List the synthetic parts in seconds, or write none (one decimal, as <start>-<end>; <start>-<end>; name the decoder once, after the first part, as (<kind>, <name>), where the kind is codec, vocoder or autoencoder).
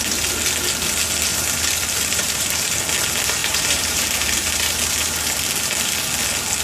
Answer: 1.3-2.8 (vocoder, BigVGAN v2); 3.4-4.5